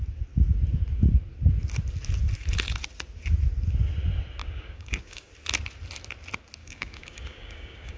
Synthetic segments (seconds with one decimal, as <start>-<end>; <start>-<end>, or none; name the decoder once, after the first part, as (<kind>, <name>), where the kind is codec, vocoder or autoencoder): 4.4-5.3 (codec, DAC); 6.6-8.0